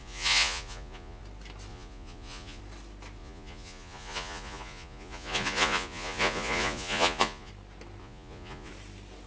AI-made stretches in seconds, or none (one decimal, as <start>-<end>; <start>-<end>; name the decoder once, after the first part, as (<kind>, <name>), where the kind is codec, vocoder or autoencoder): 0.0-1.2 (vocoder, Vocos); 1.7-2.6; 3.2-7.5; 8.0-8.7